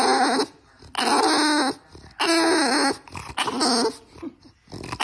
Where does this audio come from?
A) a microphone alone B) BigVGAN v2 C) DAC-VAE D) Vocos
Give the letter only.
A